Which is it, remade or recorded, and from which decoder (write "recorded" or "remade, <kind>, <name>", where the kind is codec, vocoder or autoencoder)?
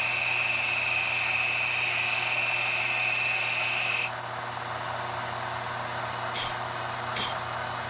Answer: recorded